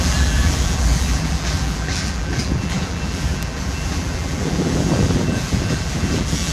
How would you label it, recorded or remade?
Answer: remade